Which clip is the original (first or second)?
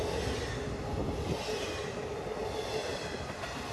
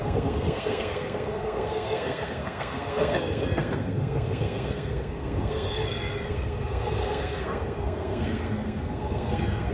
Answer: first